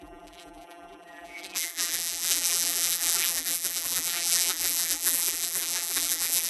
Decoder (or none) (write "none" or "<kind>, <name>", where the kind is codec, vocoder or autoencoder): vocoder, BigVGAN v2